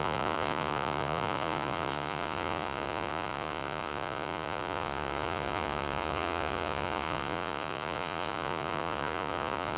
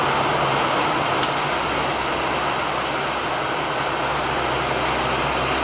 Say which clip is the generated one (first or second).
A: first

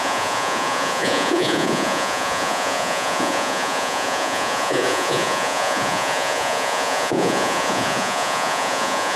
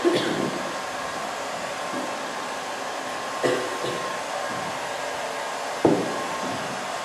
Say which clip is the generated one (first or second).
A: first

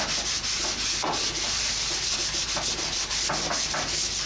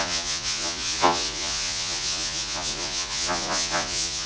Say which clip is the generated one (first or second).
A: second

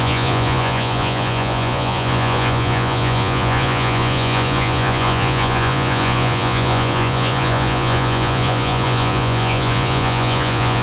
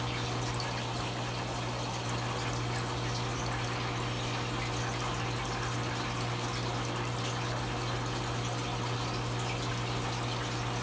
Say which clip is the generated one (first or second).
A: first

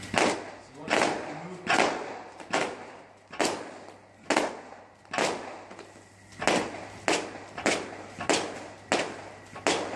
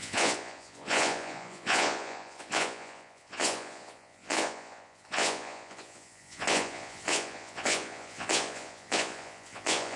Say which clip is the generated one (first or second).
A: second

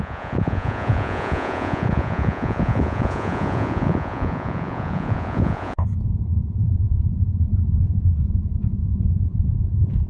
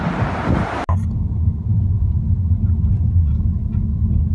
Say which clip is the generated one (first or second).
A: first